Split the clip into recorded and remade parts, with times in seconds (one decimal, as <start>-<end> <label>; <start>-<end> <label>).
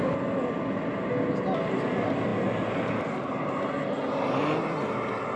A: 0.0-5.4 recorded